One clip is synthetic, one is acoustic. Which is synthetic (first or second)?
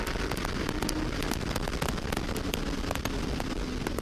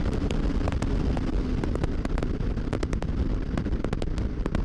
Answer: second